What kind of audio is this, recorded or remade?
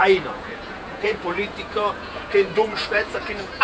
remade